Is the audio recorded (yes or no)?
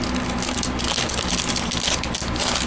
yes